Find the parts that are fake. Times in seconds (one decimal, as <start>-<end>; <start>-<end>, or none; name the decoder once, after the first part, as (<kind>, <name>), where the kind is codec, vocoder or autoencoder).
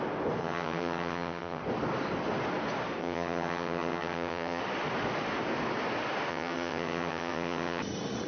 0.4-1.6 (vocoder, HiFi-GAN); 3.0-4.6; 6.3-7.8